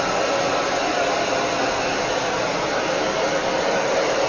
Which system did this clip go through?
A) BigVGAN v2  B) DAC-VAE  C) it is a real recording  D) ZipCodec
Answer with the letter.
C